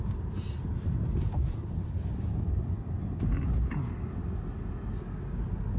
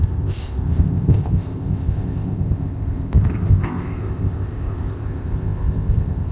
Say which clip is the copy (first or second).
second